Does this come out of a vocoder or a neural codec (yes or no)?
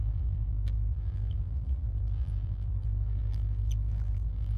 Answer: yes